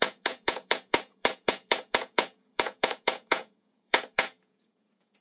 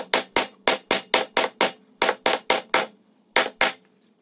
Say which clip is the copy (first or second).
first